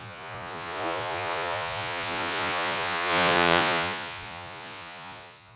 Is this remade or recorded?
remade